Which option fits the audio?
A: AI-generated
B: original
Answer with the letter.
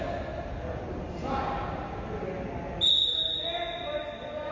B